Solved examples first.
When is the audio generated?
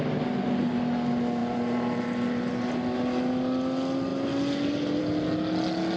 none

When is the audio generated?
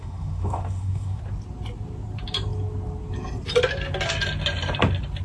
0.0-1.2